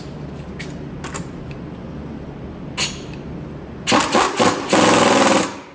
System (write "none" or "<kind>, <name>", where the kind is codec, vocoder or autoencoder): none